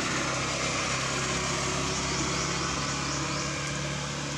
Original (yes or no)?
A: yes